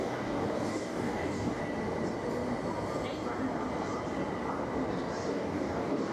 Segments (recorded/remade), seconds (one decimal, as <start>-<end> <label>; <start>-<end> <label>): 0.0-1.6 remade; 1.6-5.3 recorded; 5.3-6.1 remade